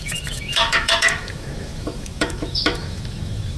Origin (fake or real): fake